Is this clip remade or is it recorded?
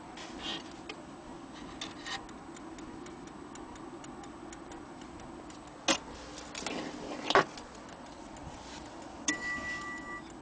recorded